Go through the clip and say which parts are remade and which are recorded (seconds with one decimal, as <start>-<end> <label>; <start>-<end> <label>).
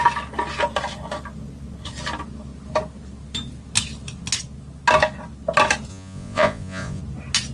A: 0.0-5.9 recorded; 5.9-7.0 remade; 7.0-7.5 recorded